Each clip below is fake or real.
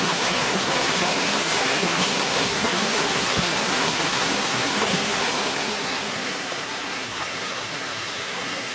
fake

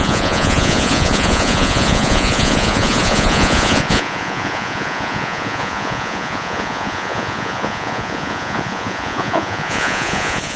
fake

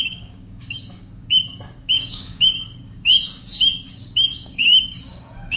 fake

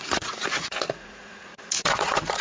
fake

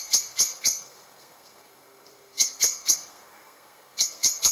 fake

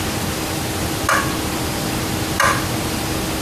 fake